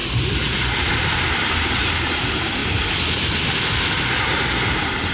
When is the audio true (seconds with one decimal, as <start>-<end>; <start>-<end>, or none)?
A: 0.0-0.8; 2.6-4.2